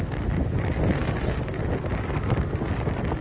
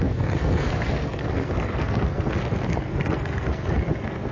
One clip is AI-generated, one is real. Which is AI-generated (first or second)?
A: second